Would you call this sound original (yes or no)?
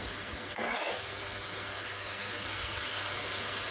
no